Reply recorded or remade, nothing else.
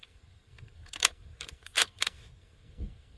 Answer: remade